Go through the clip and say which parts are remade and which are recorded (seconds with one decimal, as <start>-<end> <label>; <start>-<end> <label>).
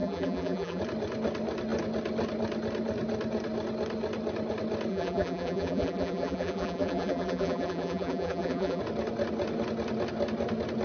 0.0-0.8 remade; 0.8-4.9 recorded; 4.9-8.8 remade; 8.8-10.8 recorded